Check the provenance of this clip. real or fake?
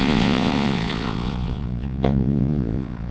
fake